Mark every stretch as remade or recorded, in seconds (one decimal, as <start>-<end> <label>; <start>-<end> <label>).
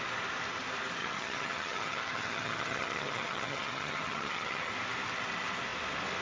0.0-1.0 recorded; 1.0-4.7 remade; 4.7-6.2 recorded